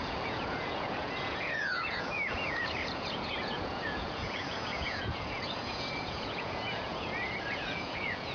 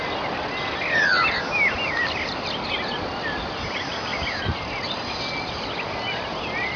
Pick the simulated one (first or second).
first